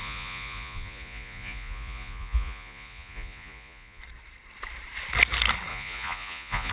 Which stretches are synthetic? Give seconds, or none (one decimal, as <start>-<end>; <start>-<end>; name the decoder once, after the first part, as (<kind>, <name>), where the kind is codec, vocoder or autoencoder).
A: 0.0-4.0 (vocoder, Vocos); 5.7-6.7